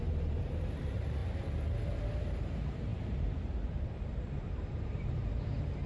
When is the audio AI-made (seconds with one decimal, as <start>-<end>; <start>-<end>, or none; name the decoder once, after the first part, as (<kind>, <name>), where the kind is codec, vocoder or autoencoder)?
0.0-1.2 (vocoder, BigVGAN v2); 2.4-5.9